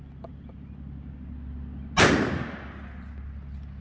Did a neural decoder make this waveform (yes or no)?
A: no